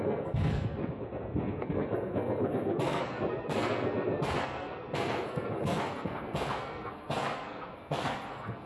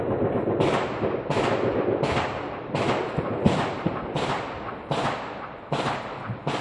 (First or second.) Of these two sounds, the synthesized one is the first